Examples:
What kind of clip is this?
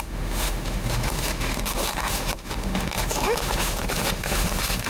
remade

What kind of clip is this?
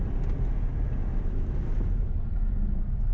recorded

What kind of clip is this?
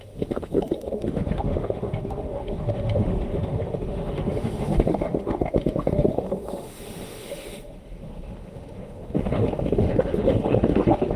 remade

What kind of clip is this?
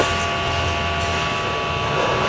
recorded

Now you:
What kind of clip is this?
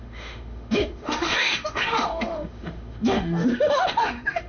remade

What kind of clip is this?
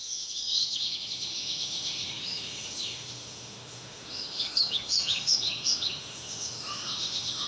remade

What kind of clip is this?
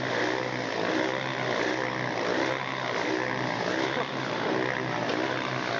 recorded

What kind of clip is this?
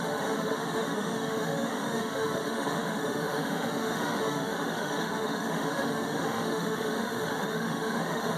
remade